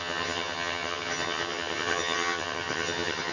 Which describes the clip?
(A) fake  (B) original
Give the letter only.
A